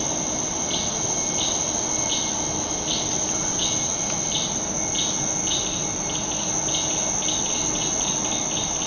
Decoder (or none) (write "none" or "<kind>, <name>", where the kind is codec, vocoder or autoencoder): none